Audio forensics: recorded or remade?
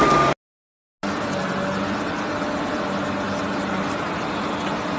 recorded